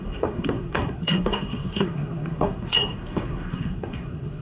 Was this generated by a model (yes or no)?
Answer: yes